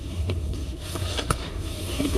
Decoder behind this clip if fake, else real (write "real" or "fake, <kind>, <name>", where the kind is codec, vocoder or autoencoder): fake, codec, SNAC